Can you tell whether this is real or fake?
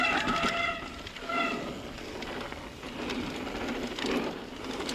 real